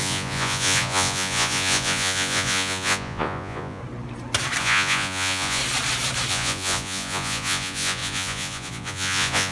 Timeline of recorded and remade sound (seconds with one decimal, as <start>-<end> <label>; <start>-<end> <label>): 0.0-3.8 remade; 3.8-4.6 recorded; 4.6-5.6 remade; 5.6-6.3 recorded; 6.3-9.5 remade

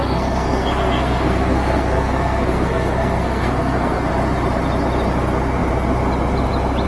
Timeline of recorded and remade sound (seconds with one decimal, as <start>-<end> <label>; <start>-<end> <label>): 0.0-4.1 remade; 4.1-6.9 recorded

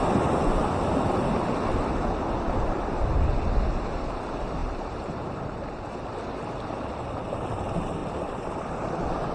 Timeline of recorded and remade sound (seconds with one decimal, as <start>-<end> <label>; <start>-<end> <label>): 0.0-4.6 recorded; 4.6-5.7 remade; 5.7-8.0 recorded; 8.0-8.5 remade; 8.5-9.3 recorded

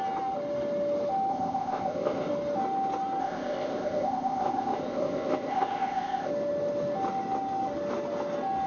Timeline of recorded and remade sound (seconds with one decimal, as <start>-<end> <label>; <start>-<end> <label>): 0.0-1.3 recorded; 1.3-2.3 remade; 2.3-3.2 recorded; 3.2-6.3 remade; 6.3-8.7 recorded

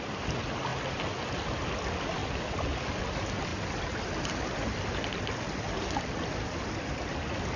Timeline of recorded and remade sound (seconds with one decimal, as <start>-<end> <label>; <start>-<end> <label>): 0.0-7.6 recorded

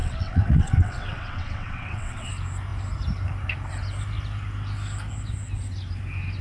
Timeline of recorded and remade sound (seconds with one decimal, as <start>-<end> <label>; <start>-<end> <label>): 0.0-2.3 remade; 2.3-6.4 recorded

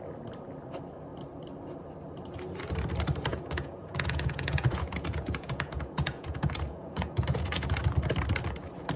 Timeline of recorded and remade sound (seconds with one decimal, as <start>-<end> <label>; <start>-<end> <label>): 0.0-3.3 recorded; 3.3-7.8 remade; 7.8-9.0 recorded